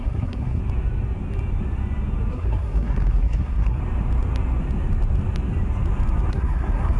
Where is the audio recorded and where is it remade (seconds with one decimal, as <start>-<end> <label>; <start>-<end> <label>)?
0.0-0.6 remade; 0.6-2.3 recorded; 2.3-3.8 remade; 3.8-6.3 recorded; 6.3-7.0 remade